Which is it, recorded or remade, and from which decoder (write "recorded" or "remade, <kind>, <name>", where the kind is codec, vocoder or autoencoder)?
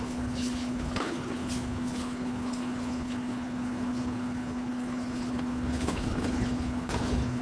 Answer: remade, codec, HILCodec